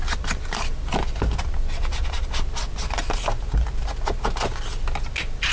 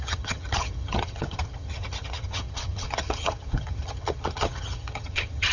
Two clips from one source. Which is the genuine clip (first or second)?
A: first